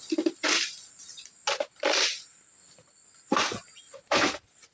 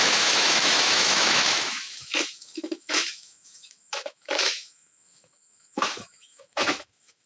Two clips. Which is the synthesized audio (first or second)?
second